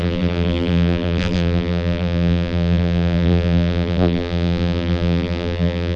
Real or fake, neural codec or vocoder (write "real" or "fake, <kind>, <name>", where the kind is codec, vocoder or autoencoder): fake, vocoder, BigVGAN v2